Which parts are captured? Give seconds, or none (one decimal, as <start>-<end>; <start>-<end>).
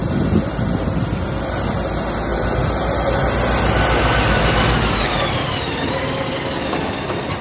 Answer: 0.0-7.4